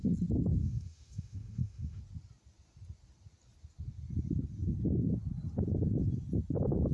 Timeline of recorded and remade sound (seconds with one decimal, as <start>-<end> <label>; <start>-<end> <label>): 0.0-0.6 recorded; 0.6-2.0 remade; 2.0-6.9 recorded